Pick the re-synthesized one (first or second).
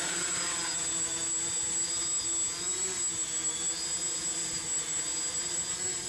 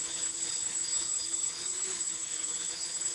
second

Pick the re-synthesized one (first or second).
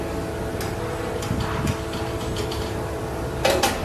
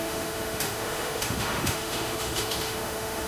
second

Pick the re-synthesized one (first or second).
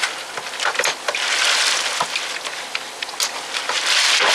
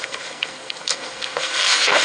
second